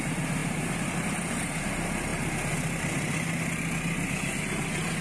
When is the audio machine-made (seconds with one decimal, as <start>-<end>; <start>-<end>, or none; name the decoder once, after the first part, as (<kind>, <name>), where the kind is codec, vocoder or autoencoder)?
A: none